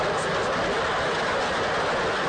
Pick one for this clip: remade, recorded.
recorded